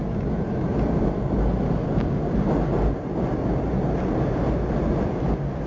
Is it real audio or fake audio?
real